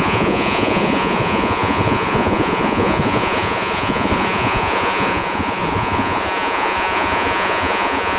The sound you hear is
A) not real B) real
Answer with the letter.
A